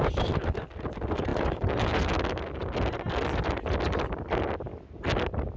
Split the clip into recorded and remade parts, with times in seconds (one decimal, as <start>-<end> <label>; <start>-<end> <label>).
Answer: 0.0-5.6 recorded